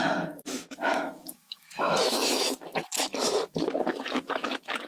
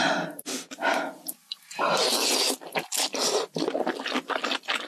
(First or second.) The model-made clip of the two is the first